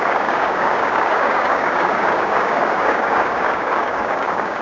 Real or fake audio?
fake